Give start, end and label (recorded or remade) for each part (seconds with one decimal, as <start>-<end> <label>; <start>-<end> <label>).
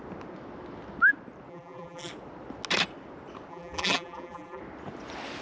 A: 0.0-1.5 recorded; 1.5-2.1 remade; 2.1-3.5 recorded; 3.5-4.6 remade; 4.6-5.4 recorded